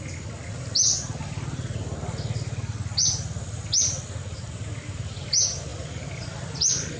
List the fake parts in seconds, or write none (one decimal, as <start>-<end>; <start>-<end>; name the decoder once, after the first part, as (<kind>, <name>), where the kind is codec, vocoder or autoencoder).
5.7-6.2 (vocoder, BigVGAN v2)